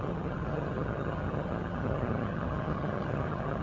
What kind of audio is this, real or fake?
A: fake